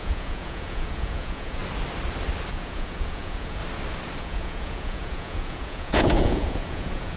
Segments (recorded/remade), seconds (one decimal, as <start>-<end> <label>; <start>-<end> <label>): 0.0-1.6 remade; 1.6-2.5 recorded; 2.5-3.6 remade; 3.6-4.2 recorded; 4.2-7.2 remade

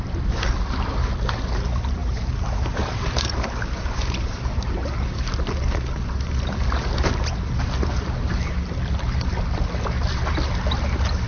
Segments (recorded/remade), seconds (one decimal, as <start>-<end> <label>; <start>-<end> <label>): 0.0-2.0 recorded; 2.0-4.4 remade; 4.4-11.3 recorded

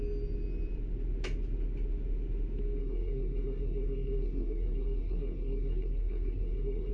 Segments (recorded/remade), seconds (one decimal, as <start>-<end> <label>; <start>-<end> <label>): 0.0-2.8 recorded; 2.8-6.9 remade

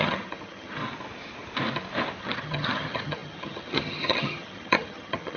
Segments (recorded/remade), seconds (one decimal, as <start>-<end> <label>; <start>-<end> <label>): 0.0-0.8 remade; 0.8-2.2 recorded; 2.2-5.4 remade

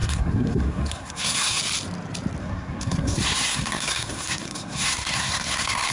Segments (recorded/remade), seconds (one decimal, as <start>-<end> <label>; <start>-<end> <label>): 0.0-1.6 remade; 1.6-2.4 recorded; 2.4-5.9 remade

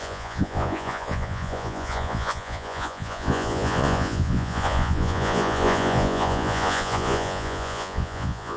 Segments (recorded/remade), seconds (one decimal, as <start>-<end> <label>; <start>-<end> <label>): 0.0-8.6 remade

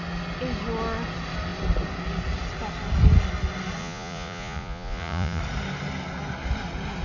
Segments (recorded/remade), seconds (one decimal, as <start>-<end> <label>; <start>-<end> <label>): 0.0-3.8 recorded; 3.8-5.4 remade; 5.4-7.0 recorded